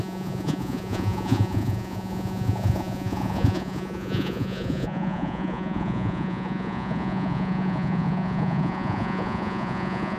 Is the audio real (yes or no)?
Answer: no